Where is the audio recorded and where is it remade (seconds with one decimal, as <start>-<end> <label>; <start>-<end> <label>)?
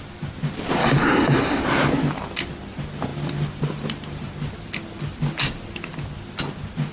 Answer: 0.0-0.8 recorded; 0.8-1.6 remade; 1.6-6.9 recorded